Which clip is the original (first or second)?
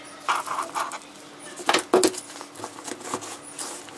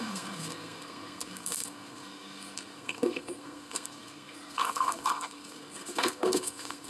first